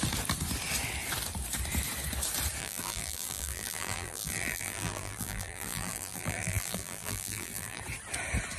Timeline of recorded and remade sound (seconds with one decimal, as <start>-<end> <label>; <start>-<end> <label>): 0.0-2.6 recorded; 2.6-7.8 remade; 7.8-8.6 recorded